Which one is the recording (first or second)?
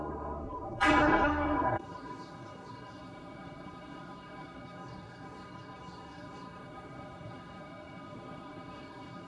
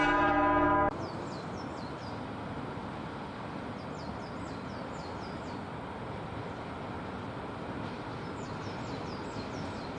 second